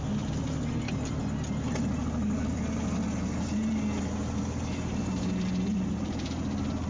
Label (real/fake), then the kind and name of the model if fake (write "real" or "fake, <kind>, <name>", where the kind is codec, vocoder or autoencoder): real